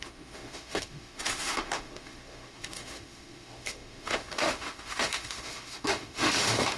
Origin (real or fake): fake